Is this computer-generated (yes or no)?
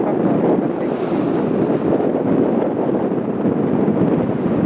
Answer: no